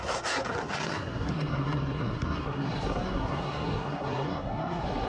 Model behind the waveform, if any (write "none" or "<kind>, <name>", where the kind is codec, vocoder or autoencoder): codec, SNAC